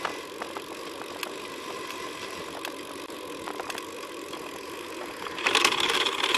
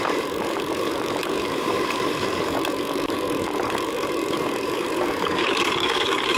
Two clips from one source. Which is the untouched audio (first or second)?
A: first